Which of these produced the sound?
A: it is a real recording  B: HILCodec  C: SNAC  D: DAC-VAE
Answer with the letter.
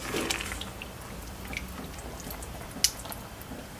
A